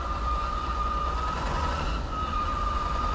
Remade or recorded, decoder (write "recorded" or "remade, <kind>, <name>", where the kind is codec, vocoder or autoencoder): remade, vocoder, Vocos